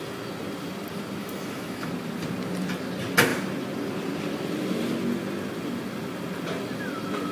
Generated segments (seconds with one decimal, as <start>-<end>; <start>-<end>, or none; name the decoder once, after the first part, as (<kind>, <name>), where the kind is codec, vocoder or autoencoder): 1.2-1.9 (autoencoder, DAC-VAE)